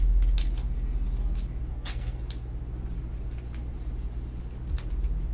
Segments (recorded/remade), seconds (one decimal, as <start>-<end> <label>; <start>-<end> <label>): 0.0-1.7 recorded; 1.7-2.2 remade; 2.2-5.3 recorded